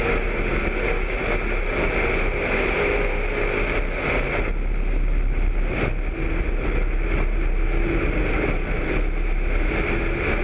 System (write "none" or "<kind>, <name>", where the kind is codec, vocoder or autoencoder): none